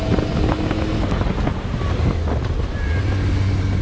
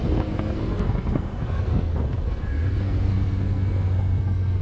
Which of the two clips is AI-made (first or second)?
second